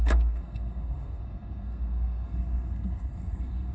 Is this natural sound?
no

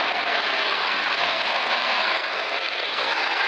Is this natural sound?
no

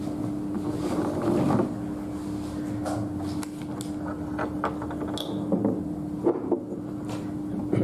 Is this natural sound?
yes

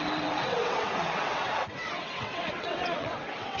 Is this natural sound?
no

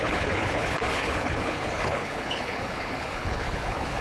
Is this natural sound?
no